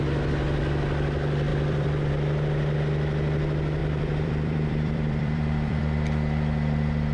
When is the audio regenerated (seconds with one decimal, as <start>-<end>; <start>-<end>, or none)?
1.5-2.1; 3.8-5.8